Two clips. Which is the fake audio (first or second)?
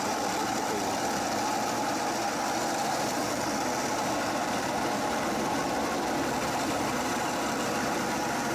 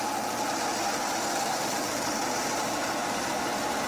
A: first